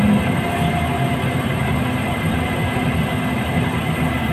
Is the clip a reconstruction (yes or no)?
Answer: no